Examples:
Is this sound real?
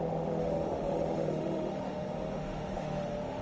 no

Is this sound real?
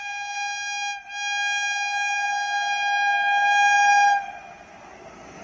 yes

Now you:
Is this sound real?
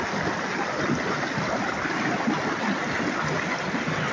yes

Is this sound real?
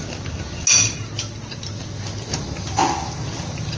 yes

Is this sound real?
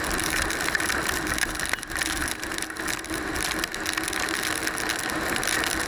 yes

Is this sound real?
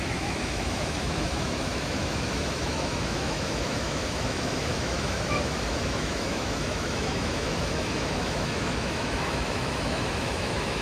no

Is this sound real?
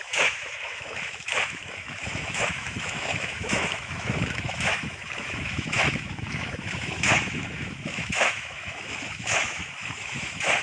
no